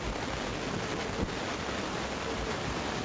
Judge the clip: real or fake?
real